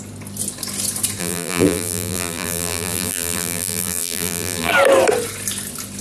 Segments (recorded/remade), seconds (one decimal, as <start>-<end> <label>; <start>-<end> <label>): 0.0-1.2 recorded; 1.2-4.7 remade; 4.7-6.0 recorded